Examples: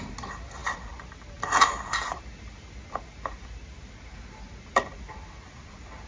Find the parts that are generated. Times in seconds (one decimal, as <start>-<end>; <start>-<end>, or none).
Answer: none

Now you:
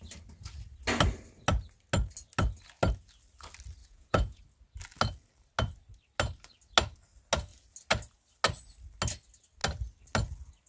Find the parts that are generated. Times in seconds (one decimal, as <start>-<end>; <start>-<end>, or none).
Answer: 3.8-4.4

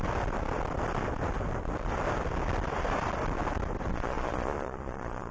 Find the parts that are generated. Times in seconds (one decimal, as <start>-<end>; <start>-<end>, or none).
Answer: 3.9-5.3